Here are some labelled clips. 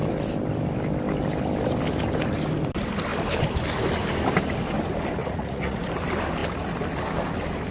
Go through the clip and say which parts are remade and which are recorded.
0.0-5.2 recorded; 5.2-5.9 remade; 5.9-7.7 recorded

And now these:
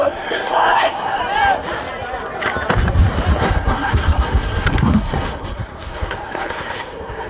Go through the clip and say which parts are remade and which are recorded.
0.0-1.2 remade; 1.2-3.3 recorded; 3.3-7.3 remade

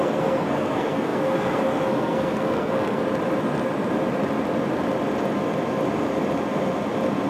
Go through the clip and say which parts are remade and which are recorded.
0.0-3.0 remade; 3.0-7.3 recorded

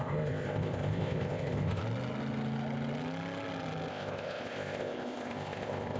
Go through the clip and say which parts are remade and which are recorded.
0.0-1.8 remade; 1.8-3.9 recorded; 3.9-6.0 remade

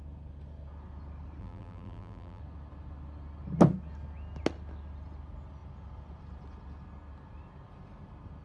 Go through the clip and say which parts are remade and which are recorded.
0.0-1.4 recorded; 1.4-2.4 remade; 2.4-8.4 recorded

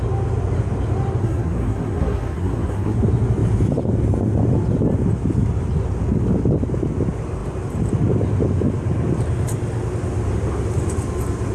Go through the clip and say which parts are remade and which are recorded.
0.0-1.2 recorded; 1.2-3.0 remade; 3.0-11.5 recorded

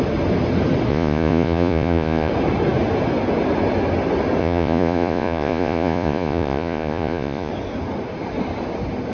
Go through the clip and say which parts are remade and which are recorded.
0.0-0.9 recorded; 0.9-2.3 remade; 2.3-4.4 recorded; 4.4-7.5 remade; 7.5-9.1 recorded

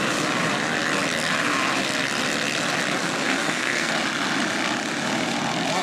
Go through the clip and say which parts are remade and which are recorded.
0.0-3.0 recorded; 3.0-3.9 remade; 3.9-5.8 recorded